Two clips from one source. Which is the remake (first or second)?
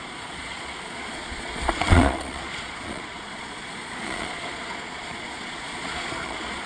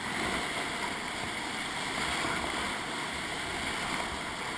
first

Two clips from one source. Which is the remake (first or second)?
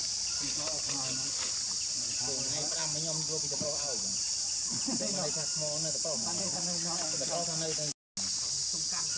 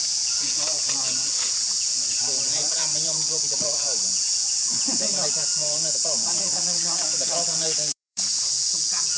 second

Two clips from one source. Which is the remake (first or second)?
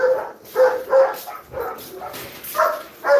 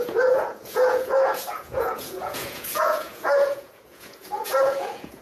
second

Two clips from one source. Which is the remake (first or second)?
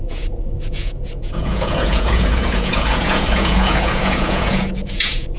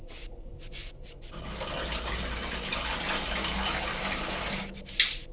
first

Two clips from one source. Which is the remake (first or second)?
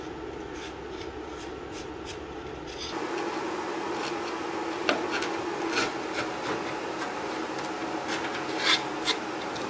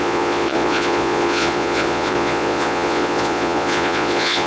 second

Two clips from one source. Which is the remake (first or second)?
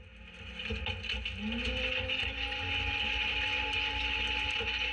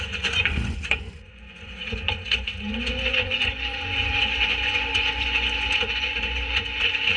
second